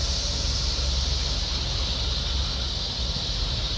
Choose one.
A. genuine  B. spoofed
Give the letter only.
A